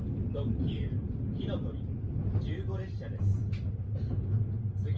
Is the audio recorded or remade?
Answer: recorded